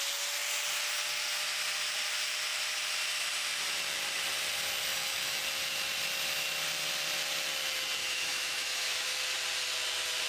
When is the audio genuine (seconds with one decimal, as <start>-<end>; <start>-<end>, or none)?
0.0-4.9; 5.4-8.0; 9.1-10.3